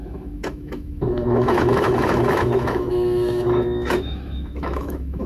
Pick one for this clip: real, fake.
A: fake